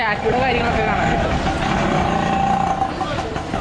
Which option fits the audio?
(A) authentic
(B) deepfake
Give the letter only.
A